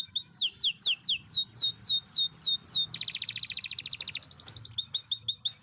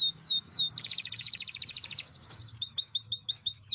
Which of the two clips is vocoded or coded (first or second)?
second